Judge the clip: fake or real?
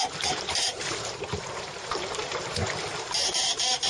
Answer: real